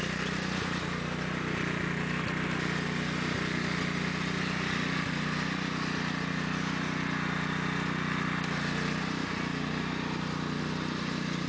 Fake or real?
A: real